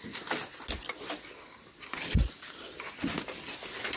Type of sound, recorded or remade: recorded